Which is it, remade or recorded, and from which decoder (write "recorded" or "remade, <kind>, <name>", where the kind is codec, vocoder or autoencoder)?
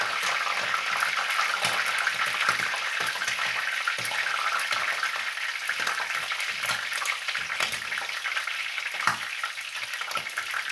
recorded